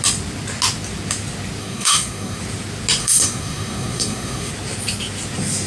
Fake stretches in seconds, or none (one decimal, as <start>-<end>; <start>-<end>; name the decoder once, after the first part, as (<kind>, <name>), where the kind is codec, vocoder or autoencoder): 1.6-2.4 (codec, SNAC); 3.0-4.5